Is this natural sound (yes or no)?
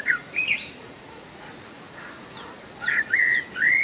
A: no